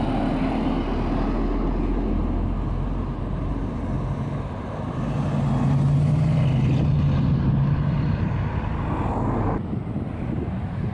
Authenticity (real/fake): real